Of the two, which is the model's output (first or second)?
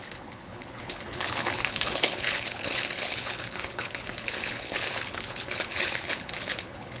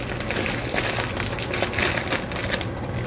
first